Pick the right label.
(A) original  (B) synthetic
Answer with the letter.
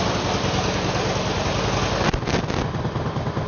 A